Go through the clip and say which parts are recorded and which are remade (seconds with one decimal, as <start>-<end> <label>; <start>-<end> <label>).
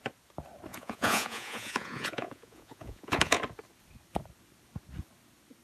0.0-0.7 recorded; 0.7-3.4 remade; 3.4-5.6 recorded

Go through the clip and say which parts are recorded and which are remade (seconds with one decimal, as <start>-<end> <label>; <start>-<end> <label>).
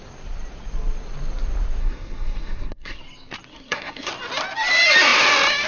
0.0-1.8 recorded; 1.8-3.0 remade; 3.0-3.5 recorded; 3.5-4.1 remade; 4.1-5.7 recorded